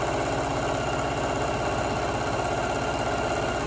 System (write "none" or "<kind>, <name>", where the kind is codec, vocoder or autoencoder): none